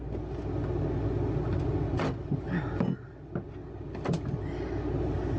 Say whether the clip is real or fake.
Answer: real